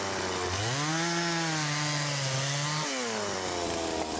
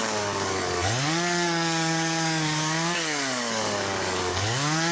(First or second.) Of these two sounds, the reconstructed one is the second